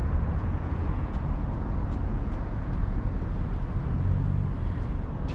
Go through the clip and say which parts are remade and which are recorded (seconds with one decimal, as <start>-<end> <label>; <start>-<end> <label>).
0.0-3.2 remade; 3.2-5.3 recorded

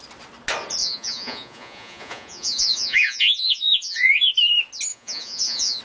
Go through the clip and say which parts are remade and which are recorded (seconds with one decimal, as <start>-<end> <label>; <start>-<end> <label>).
0.0-0.8 recorded; 0.8-4.3 remade; 4.3-4.9 recorded; 4.9-5.8 remade

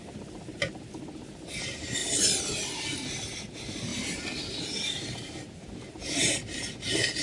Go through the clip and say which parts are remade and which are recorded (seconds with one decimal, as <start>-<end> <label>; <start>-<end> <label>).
0.0-2.0 remade; 2.0-3.4 recorded; 3.4-3.9 remade; 3.9-4.6 recorded; 4.6-7.2 remade

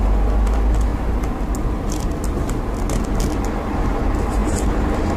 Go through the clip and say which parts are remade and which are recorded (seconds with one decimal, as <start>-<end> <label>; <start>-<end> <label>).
0.0-4.4 recorded; 4.4-5.2 remade

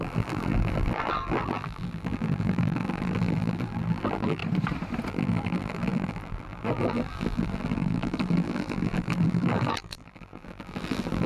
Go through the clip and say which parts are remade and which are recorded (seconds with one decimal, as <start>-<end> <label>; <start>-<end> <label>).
0.0-4.4 remade; 4.4-5.1 recorded; 5.1-11.3 remade

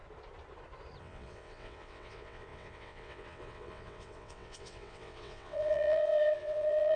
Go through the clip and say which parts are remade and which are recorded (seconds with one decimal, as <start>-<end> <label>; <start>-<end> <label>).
0.0-1.0 recorded; 1.0-7.0 remade

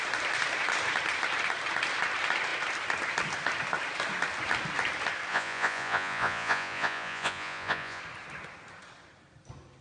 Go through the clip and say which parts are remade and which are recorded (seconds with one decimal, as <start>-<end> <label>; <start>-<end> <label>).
0.0-5.3 recorded; 5.3-8.0 remade; 8.0-9.8 recorded

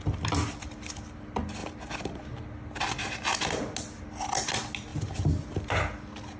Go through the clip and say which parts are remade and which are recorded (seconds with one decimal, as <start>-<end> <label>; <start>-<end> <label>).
0.0-6.4 recorded